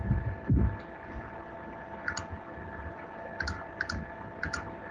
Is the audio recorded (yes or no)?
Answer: yes